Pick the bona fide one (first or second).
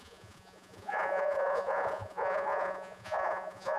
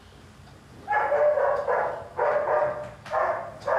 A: second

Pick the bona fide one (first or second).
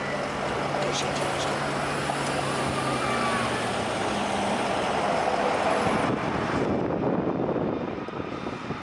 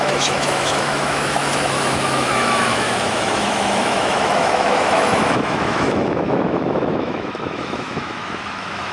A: first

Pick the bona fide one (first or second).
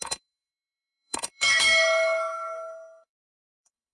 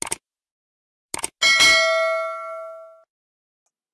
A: second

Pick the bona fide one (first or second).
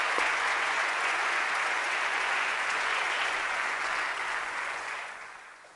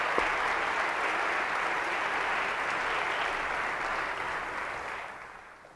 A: second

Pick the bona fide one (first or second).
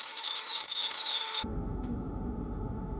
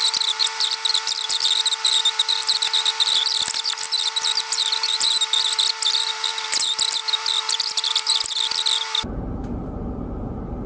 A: second